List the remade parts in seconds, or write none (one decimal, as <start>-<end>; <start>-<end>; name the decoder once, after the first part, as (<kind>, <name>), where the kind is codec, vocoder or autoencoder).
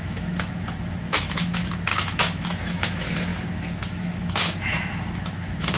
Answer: 0.0-5.8 (autoencoder, DAC-VAE)